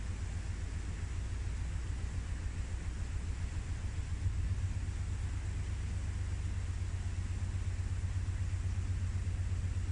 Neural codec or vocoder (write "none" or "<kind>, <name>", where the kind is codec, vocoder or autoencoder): none